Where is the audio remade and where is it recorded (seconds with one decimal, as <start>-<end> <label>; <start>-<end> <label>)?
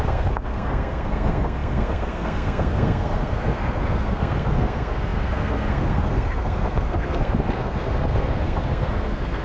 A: 0.0-9.4 remade